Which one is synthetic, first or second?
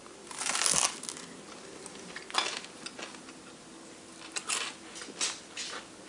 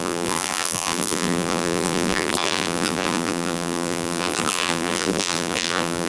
second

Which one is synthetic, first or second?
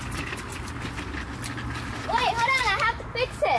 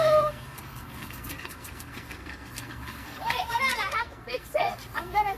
second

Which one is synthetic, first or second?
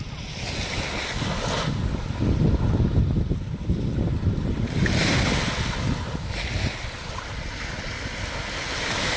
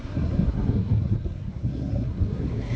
second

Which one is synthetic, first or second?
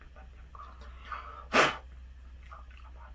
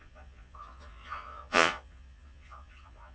second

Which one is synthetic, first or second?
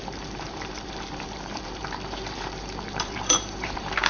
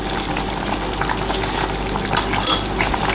first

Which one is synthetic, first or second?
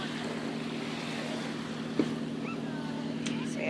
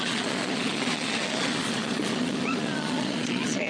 second